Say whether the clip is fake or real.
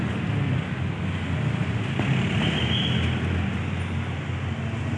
real